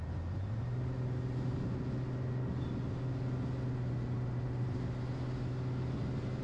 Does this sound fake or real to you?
real